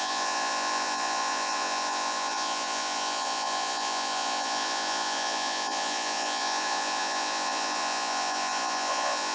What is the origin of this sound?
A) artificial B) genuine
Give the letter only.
A